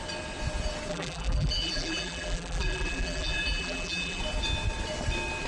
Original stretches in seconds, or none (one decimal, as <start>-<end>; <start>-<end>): 0.0-0.9; 4.2-5.5